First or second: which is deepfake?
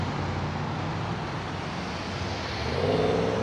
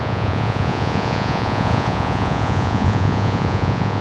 second